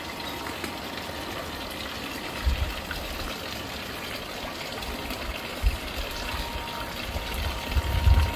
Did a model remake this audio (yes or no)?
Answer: no